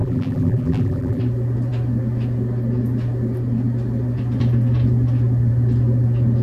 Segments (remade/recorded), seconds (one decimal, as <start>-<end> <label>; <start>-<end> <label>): 0.0-1.2 remade; 1.2-6.4 recorded